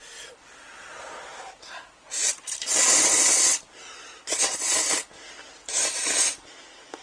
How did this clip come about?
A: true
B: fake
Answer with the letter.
A